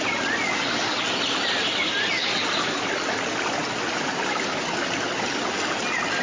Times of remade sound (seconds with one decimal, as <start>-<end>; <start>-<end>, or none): none